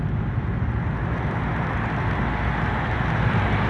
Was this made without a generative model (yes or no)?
yes